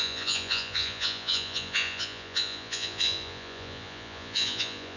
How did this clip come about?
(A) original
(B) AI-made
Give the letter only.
B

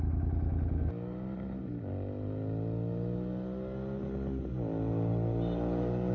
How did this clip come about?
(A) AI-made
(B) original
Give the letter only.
B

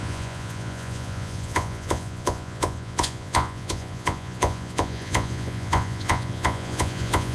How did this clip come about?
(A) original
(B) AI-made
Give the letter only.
B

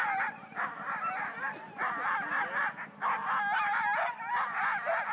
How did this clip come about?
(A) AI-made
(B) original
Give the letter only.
B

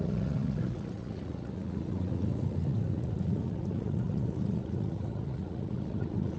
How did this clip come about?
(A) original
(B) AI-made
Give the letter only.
B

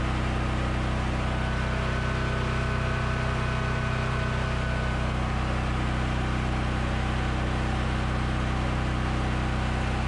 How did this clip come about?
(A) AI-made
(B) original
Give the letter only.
B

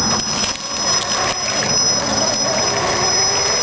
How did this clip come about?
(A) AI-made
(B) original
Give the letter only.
B